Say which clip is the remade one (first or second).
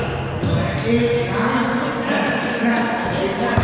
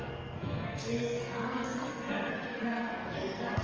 second